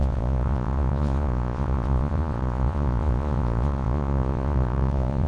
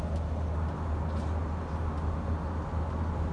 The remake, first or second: first